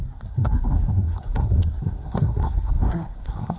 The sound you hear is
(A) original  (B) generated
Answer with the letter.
B